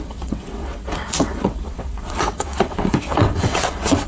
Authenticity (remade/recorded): remade